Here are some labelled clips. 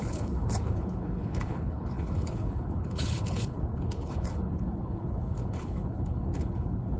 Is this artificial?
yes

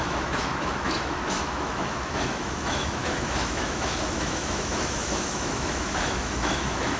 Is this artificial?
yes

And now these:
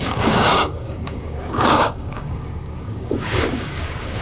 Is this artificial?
yes